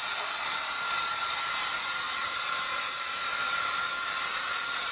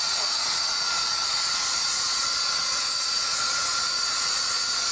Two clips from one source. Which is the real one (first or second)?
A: first